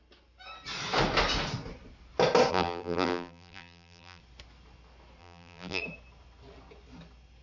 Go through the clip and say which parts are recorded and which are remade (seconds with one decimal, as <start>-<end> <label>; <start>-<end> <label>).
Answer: 0.0-2.5 recorded; 2.5-4.2 remade; 4.2-5.2 recorded; 5.2-5.8 remade; 5.8-7.4 recorded